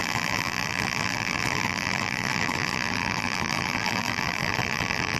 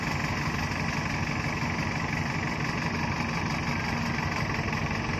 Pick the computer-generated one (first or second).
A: first